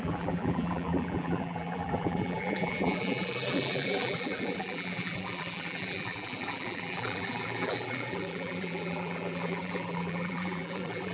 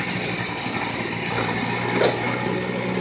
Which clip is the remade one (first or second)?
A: first